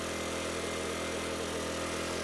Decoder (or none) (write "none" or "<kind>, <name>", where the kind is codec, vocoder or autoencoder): none